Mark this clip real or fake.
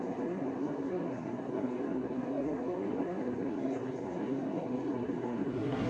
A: fake